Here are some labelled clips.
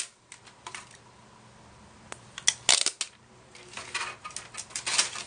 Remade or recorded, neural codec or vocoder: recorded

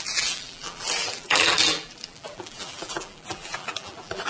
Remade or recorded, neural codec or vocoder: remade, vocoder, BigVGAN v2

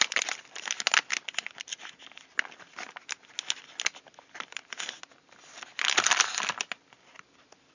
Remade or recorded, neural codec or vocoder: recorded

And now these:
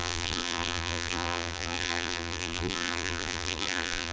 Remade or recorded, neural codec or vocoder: remade, vocoder, BigVGAN v2